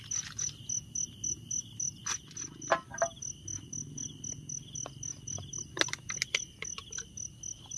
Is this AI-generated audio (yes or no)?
no